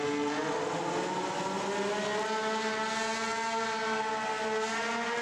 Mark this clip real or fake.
real